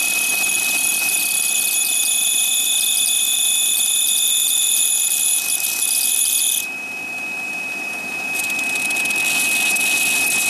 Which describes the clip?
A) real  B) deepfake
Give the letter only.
A